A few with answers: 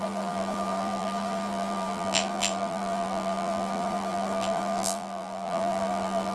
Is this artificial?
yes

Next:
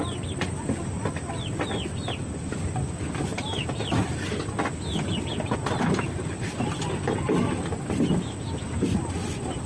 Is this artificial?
no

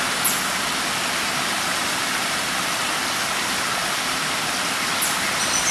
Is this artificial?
no